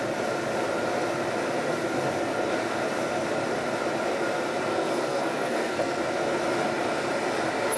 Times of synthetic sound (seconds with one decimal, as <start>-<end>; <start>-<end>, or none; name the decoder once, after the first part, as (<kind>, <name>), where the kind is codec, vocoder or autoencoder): 4.7-6.0 (codec, SNAC)